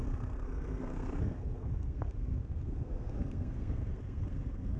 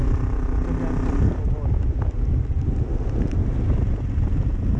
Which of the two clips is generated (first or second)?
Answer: first